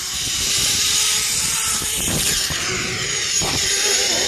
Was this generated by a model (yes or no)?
yes